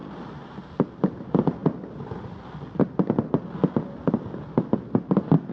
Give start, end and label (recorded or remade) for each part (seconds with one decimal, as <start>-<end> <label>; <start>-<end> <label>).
0.0-5.5 recorded